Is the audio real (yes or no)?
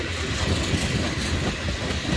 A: yes